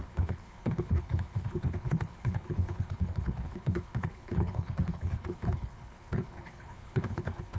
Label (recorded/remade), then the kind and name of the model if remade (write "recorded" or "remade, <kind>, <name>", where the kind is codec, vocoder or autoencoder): remade, codec, HILCodec